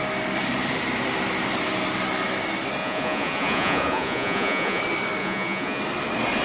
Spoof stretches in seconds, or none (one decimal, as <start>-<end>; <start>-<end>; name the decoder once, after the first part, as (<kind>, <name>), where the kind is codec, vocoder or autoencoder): 2.8-4.8 (vocoder, Vocos); 5.2-5.8